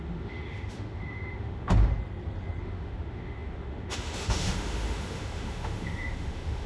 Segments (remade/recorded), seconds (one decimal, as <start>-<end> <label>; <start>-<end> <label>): 0.0-1.9 remade; 1.9-2.6 recorded; 2.6-6.7 remade